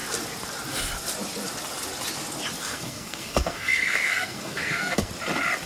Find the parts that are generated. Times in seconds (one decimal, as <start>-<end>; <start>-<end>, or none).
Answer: 2.6-5.1